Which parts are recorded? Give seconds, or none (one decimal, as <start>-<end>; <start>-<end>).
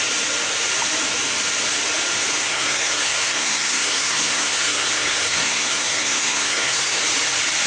0.0-2.4; 7.0-7.7